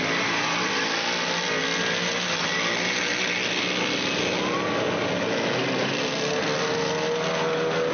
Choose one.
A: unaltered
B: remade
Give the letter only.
A